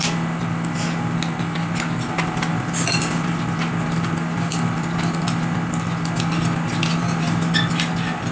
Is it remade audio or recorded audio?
recorded